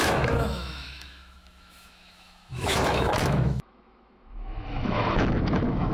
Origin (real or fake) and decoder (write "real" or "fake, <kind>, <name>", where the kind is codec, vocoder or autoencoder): fake, autoencoder, DAC-VAE